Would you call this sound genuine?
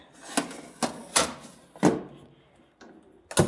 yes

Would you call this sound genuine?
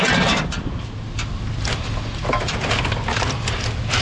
yes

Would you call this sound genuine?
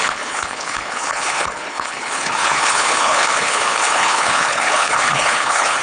no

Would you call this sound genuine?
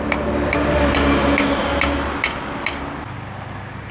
yes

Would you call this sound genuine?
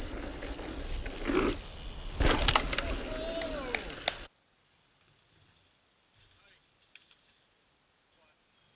yes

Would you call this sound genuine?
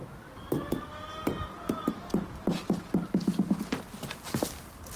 yes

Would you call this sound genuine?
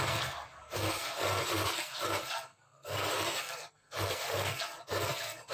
no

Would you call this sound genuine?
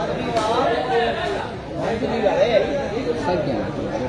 yes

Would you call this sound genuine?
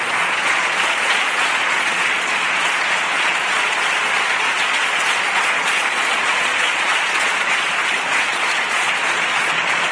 no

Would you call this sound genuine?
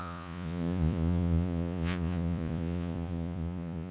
no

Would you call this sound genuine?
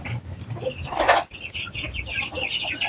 yes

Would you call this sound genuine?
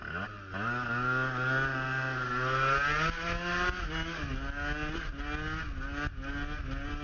yes